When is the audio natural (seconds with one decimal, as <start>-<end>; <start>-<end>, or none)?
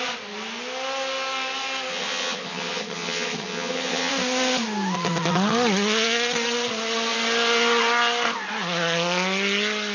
0.0-1.9; 4.1-9.9